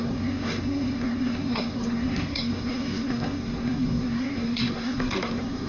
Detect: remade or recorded remade